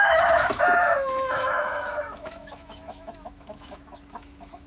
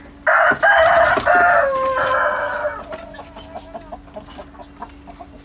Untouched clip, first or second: second